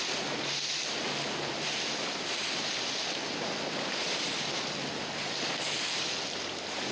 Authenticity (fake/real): real